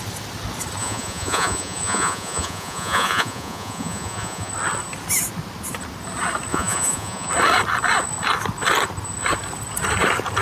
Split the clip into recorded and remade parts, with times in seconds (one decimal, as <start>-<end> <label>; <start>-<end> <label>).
0.0-0.8 recorded; 0.8-4.5 remade; 4.5-6.5 recorded; 6.5-7.3 remade; 7.3-10.4 recorded